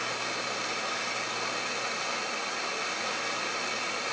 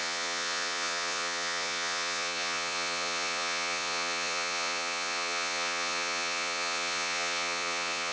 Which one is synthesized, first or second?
second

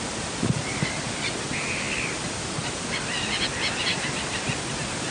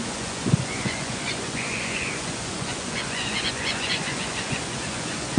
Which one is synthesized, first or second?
second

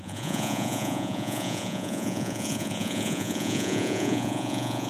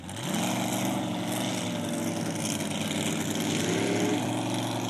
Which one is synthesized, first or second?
first